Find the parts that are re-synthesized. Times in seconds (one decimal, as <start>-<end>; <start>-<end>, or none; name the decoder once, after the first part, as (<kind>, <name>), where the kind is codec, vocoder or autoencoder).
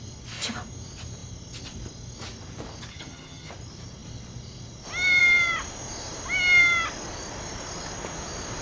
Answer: 2.9-3.5 (vocoder, HiFi-GAN)